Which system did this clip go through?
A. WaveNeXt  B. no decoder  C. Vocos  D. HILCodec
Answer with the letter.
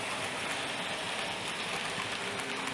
B